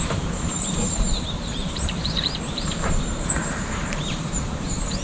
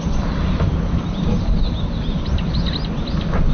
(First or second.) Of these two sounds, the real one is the second